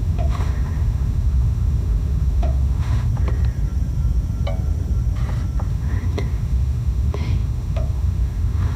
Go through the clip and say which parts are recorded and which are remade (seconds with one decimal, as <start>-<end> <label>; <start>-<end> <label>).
0.0-3.1 remade; 3.1-5.7 recorded; 5.7-8.8 remade